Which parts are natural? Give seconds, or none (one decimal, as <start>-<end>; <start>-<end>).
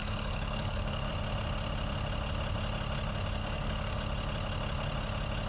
1.1-3.4; 4.0-5.5